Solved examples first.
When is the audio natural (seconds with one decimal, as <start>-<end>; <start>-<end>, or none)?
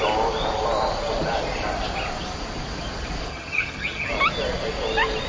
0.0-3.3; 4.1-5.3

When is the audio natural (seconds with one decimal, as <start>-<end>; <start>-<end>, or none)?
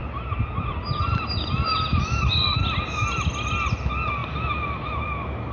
0.0-0.7; 3.5-4.2; 4.9-5.5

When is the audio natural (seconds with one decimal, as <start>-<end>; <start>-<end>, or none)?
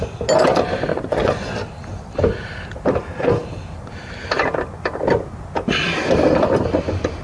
0.0-0.9; 1.5-7.2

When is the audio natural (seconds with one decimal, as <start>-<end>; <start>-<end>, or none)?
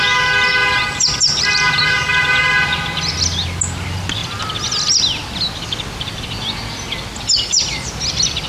0.0-0.6; 2.6-8.5